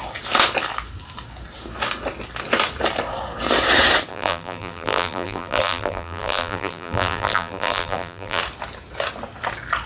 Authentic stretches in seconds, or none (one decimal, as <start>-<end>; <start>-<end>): 0.0-4.1; 8.4-9.9